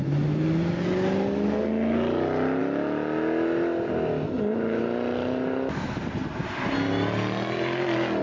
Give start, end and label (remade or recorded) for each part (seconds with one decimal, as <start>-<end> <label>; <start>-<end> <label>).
0.0-8.2 recorded